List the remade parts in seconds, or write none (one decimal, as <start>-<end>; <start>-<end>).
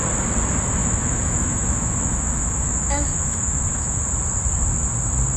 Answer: 0.8-4.0